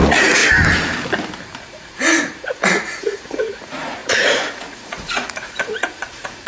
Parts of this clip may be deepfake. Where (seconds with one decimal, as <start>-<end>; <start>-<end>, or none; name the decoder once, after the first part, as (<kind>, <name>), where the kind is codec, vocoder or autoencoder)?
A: 0.0-0.4 (vocoder, Vocos); 1.6-6.5